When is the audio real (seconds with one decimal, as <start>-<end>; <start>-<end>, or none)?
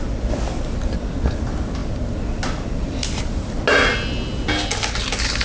0.0-5.4